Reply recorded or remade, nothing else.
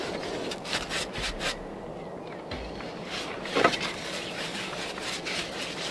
recorded